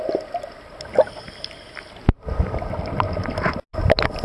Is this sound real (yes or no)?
yes